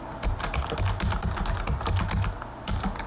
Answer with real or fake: real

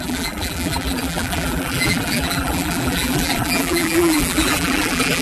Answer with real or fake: fake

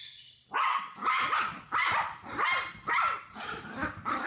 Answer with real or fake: fake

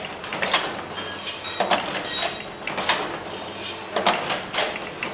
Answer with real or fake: real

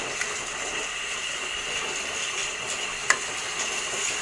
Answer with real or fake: real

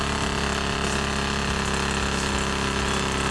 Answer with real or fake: real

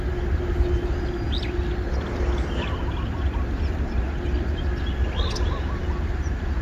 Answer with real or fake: real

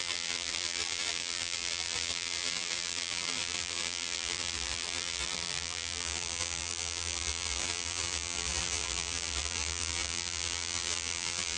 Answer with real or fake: fake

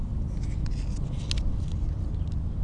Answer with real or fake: real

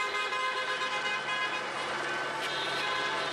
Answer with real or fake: real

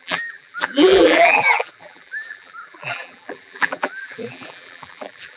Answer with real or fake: fake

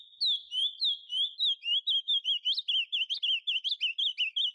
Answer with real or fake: real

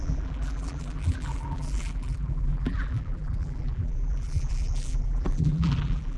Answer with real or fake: fake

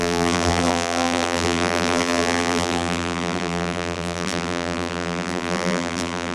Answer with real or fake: fake